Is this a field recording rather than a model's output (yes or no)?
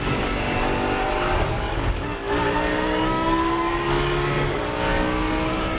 no